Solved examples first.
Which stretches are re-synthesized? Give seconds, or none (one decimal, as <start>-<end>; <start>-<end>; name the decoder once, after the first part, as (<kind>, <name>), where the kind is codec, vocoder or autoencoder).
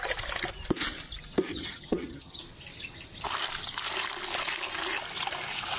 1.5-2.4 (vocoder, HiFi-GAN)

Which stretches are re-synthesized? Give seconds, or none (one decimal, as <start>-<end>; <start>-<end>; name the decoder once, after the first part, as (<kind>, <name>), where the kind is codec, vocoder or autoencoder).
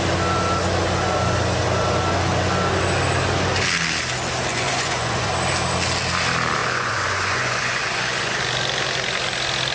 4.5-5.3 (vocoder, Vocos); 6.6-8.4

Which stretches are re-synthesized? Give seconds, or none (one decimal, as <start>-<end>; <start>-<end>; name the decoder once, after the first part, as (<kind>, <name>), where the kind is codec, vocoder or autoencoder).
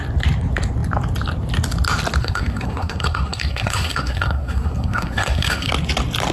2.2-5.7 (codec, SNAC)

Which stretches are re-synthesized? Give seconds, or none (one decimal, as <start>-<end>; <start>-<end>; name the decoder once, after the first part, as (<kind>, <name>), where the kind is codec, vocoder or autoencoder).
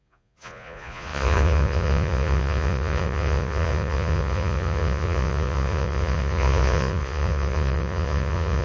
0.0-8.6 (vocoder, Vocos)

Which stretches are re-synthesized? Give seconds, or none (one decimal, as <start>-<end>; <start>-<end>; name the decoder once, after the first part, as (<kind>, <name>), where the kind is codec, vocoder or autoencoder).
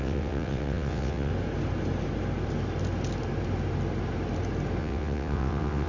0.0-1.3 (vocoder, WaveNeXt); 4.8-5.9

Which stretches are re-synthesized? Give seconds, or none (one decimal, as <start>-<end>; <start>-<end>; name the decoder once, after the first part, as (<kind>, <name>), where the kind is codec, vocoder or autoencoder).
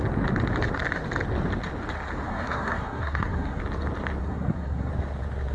2.3-3.6 (codec, SNAC); 4.2-4.9